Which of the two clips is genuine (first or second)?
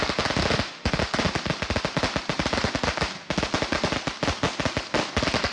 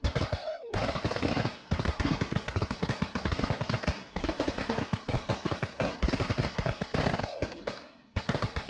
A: first